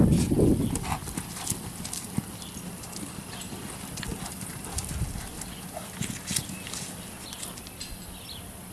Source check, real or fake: real